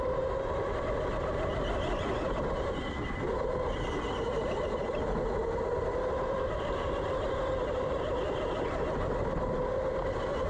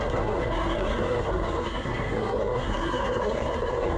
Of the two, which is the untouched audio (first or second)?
first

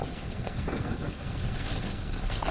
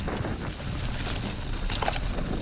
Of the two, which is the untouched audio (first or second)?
second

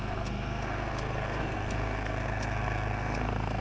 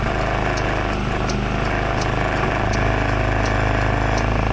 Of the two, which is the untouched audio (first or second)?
second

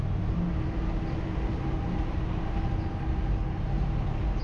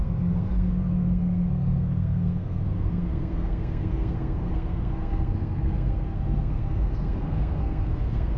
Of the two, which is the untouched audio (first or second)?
first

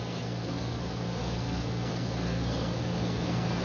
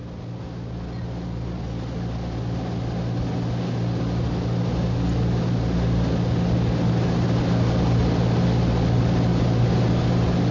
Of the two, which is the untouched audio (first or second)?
second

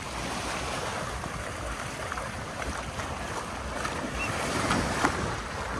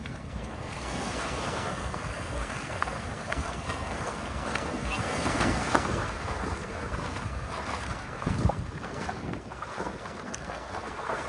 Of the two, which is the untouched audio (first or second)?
first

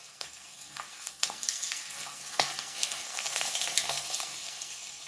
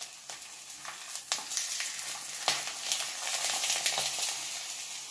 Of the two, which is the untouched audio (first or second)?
second